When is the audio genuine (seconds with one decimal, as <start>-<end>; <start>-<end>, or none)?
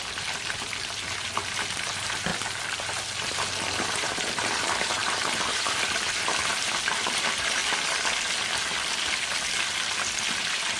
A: 7.6-10.4